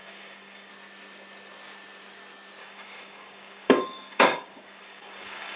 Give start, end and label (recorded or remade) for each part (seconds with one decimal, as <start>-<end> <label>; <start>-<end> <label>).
0.0-0.7 remade; 0.7-2.6 recorded; 2.6-5.6 remade